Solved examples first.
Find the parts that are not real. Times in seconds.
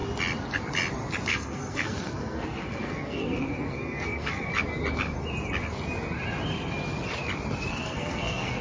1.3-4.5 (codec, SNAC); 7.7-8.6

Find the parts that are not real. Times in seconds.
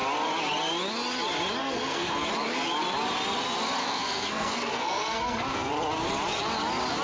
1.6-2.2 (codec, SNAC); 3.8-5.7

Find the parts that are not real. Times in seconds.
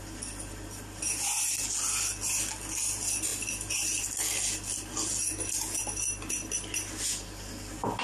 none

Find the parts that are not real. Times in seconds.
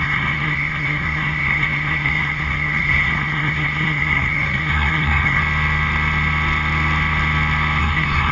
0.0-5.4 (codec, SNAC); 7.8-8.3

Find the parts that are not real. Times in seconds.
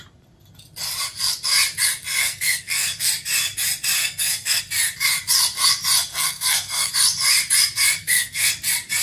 2.2-3.1 (codec, SNAC); 4.0-4.6; 6.1-6.9; 8.0-8.5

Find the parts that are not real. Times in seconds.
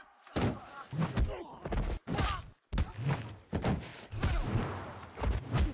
none